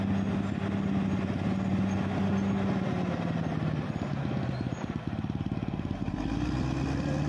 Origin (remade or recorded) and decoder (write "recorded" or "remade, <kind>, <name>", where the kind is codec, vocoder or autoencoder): recorded